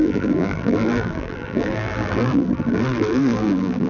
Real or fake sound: fake